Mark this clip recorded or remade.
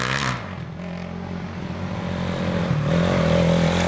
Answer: recorded